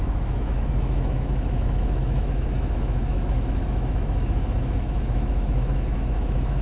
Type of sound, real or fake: fake